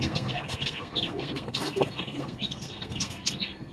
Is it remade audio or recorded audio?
remade